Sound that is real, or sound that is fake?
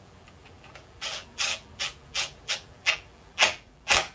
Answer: fake